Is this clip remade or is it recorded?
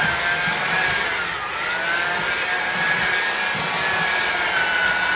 recorded